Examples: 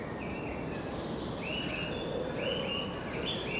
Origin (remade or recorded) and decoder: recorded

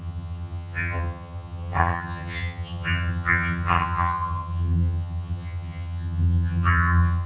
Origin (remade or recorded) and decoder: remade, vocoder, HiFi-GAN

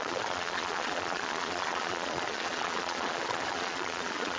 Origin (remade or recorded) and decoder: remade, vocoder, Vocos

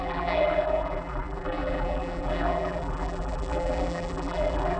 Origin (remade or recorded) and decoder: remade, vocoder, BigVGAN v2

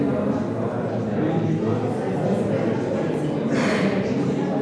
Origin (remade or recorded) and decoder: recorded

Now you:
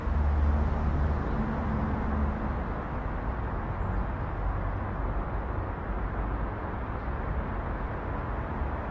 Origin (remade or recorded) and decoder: recorded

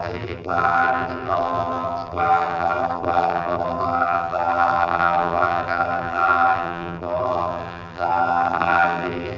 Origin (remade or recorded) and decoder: remade, vocoder, BigVGAN v2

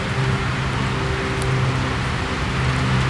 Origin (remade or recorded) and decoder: recorded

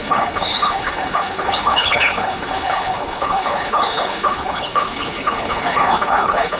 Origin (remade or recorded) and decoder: remade, codec, HILCodec